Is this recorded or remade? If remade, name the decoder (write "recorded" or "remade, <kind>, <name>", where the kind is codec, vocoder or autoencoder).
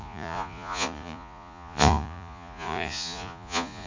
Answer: remade, vocoder, Vocos